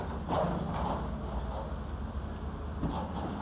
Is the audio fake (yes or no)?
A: no